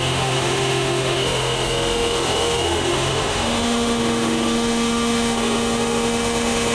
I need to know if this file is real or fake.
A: fake